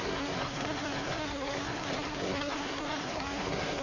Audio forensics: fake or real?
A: fake